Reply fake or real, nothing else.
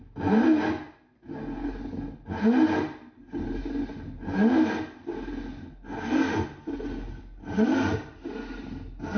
real